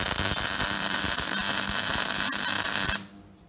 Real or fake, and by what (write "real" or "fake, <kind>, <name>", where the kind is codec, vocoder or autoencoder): real